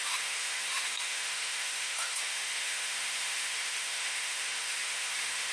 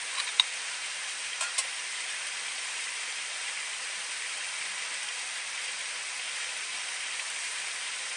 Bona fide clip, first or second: second